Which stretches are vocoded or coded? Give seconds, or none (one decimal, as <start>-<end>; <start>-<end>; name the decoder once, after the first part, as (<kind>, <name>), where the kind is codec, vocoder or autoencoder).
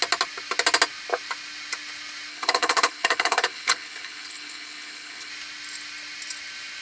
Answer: 2.3-5.3 (codec, HILCodec)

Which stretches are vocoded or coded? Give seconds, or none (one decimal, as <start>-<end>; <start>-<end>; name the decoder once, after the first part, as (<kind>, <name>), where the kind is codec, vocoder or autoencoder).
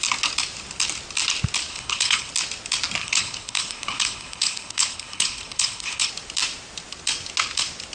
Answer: 1.7-2.3 (codec, HILCodec); 3.0-6.1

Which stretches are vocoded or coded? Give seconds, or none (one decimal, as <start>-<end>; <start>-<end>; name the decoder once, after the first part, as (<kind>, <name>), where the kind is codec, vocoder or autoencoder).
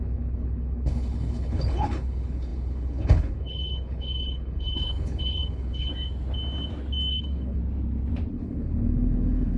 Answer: 0.0-5.9 (codec, HILCodec); 7.1-7.6; 8.3-9.6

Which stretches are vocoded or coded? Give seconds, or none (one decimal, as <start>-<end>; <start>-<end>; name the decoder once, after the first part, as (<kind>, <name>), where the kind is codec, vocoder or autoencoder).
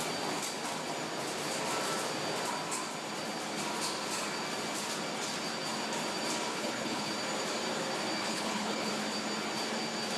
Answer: 6.5-7.1 (codec, HILCodec); 8.2-8.9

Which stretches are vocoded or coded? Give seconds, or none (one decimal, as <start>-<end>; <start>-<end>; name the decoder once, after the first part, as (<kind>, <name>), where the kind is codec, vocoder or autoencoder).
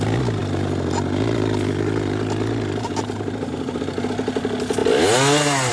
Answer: none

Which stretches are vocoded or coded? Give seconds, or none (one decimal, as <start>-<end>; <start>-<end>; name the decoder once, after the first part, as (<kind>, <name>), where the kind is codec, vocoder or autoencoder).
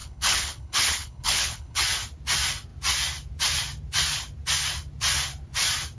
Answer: 0.0-1.8 (codec, HILCodec)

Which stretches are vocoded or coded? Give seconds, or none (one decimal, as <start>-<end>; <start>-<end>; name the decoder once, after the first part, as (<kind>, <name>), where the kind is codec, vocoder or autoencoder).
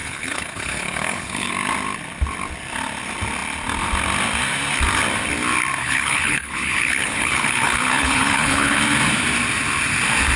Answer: 0.0-1.5 (codec, HILCodec); 5.8-8.8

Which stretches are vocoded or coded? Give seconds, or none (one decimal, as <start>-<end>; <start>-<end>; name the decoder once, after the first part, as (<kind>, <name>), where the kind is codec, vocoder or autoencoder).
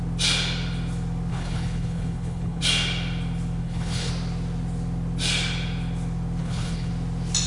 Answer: 1.3-2.6 (codec, HILCodec); 3.6-4.1; 6.4-6.9